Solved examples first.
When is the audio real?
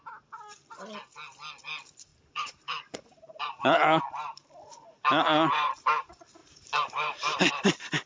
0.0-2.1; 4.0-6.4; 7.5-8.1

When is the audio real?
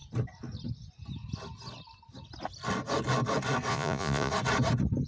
0.0-3.7; 4.3-5.1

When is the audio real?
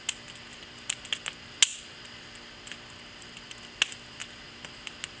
0.0-5.2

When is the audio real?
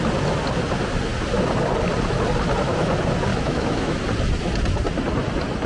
0.0-3.3; 4.0-5.7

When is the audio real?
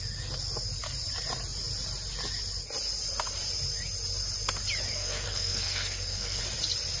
0.0-4.9; 6.4-7.0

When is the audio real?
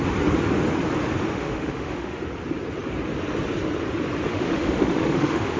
0.0-1.3; 2.2-4.3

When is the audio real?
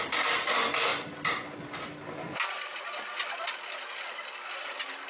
0.0-5.1